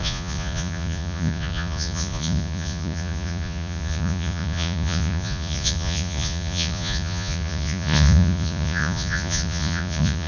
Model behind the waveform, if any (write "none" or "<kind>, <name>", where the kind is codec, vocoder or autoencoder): vocoder, Vocos